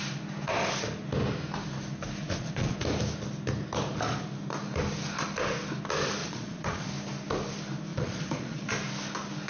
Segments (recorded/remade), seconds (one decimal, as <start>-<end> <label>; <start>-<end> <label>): 0.0-2.2 recorded; 2.2-2.8 remade; 2.8-6.2 recorded; 6.2-6.9 remade; 6.9-7.9 recorded; 7.9-8.7 remade; 8.7-9.5 recorded